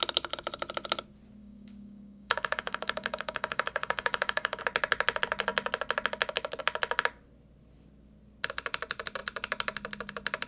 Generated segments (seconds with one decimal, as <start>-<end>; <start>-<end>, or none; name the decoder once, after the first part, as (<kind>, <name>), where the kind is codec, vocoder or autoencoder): 1.4-4.6 (codec, DAC)